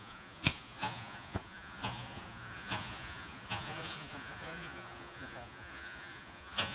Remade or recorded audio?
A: remade